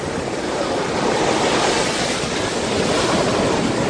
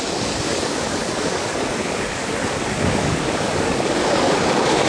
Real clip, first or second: first